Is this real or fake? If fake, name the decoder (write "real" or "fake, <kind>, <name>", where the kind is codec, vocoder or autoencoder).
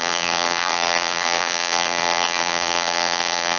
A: fake, vocoder, BigVGAN v2